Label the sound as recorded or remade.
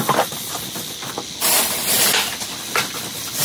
recorded